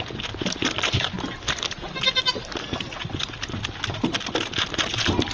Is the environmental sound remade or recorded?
recorded